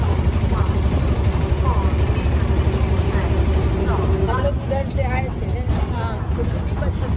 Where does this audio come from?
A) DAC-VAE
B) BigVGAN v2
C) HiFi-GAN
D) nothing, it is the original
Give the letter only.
D